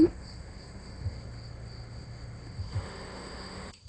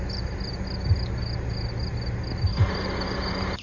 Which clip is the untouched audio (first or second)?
second